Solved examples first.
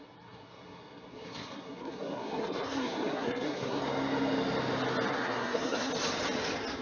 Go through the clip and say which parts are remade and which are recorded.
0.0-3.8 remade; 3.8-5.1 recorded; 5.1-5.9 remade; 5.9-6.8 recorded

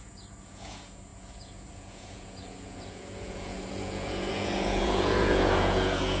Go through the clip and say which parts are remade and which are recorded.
0.0-6.2 remade

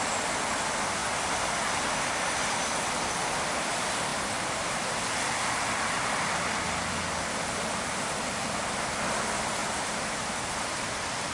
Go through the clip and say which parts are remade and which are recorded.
0.0-9.6 recorded; 9.6-10.2 remade; 10.2-11.3 recorded

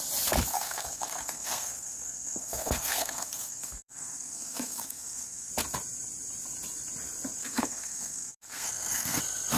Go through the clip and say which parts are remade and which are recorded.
0.0-0.5 recorded; 0.5-5.5 remade; 5.5-7.4 recorded; 7.4-9.2 remade; 9.2-9.6 recorded

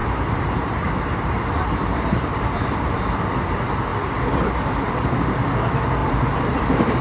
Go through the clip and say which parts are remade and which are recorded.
0.0-1.4 remade; 1.4-1.9 recorded; 1.9-3.2 remade; 3.2-6.0 recorded; 6.0-7.0 remade

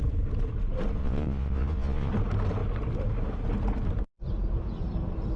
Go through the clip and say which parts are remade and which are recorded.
0.0-1.0 recorded; 1.0-2.1 remade; 2.1-5.4 recorded

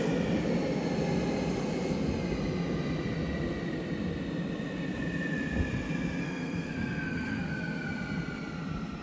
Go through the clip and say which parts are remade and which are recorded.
0.0-6.2 recorded; 6.2-7.5 remade; 7.5-9.0 recorded

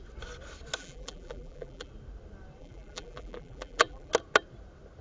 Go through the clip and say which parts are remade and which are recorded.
0.0-0.8 recorded; 0.8-1.9 remade; 1.9-2.6 recorded; 2.6-4.1 remade; 4.1-5.0 recorded